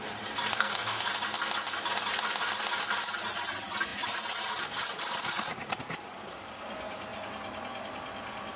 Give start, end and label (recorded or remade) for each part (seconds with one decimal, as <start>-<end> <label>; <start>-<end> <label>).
0.0-0.5 recorded; 0.5-1.1 remade; 1.1-8.6 recorded